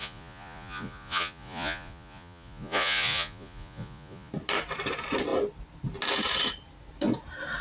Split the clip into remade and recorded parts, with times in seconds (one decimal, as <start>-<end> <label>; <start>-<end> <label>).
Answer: 0.0-4.3 remade; 4.3-7.6 recorded